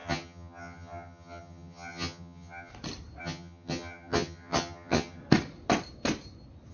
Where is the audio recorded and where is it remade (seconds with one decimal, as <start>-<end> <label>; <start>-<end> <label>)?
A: 0.0-2.7 remade; 2.7-3.2 recorded; 3.2-5.2 remade; 5.2-6.7 recorded